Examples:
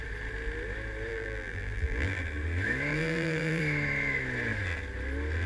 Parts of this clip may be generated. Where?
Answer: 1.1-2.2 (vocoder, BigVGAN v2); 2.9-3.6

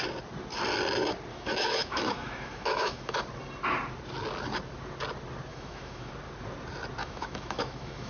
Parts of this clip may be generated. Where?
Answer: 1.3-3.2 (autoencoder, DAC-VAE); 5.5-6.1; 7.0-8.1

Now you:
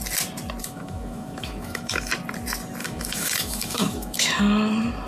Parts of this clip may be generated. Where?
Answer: 0.6-2.1 (autoencoder, DAC-VAE); 2.8-4.4